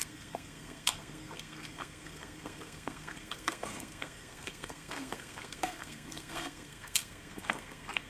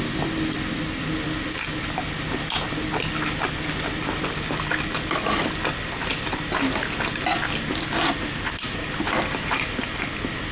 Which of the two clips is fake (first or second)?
first